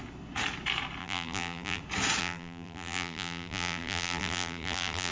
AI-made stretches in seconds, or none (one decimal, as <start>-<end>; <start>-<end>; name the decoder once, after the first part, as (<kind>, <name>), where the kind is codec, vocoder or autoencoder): 1.0-1.8 (vocoder, BigVGAN v2); 2.2-5.1